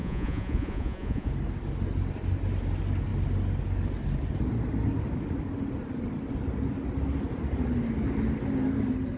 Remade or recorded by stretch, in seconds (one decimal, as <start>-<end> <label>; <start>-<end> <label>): 0.0-1.3 remade; 1.3-9.2 recorded